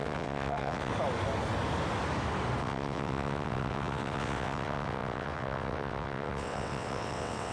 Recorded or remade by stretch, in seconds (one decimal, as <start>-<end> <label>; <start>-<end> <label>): 0.0-0.9 remade; 0.9-2.6 recorded; 2.6-7.5 remade